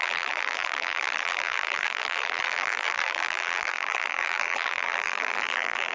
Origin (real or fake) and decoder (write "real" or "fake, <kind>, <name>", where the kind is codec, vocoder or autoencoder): fake, vocoder, BigVGAN v2